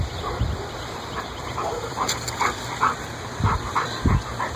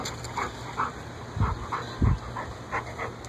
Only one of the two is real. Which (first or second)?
second